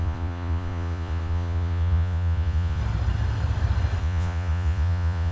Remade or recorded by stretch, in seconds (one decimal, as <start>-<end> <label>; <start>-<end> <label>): 0.0-2.8 remade; 2.8-4.0 recorded; 4.0-5.3 remade